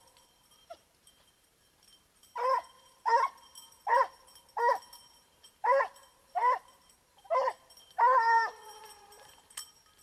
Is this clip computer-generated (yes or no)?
yes